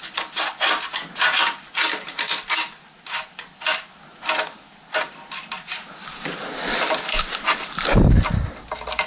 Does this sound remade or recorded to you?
recorded